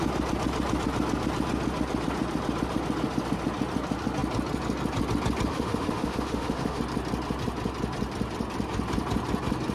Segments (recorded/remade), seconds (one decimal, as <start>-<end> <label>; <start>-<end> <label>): 0.0-5.5 recorded; 5.5-6.8 remade; 6.8-9.7 recorded